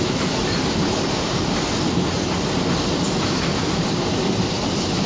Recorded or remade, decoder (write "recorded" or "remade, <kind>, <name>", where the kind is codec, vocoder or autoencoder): recorded